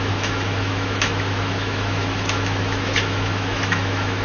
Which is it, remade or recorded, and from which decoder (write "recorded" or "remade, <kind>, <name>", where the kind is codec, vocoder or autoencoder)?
remade, autoencoder, DAC-VAE